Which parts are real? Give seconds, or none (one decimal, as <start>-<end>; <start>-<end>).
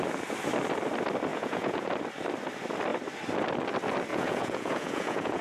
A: 0.0-1.3; 1.9-4.1